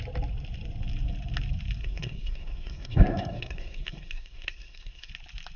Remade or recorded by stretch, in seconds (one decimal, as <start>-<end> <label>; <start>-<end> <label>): 0.0-1.8 recorded; 1.8-5.1 remade; 5.1-5.6 recorded

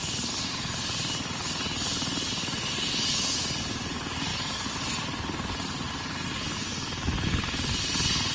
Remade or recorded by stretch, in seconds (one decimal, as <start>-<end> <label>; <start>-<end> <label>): 0.0-8.3 recorded